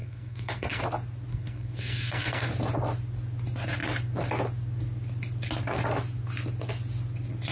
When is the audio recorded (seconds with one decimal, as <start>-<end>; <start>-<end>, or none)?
0.8-1.3; 2.5-7.5